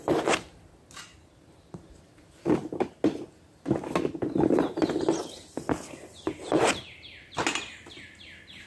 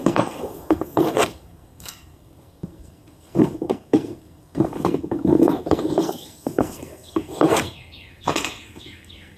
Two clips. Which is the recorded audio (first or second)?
first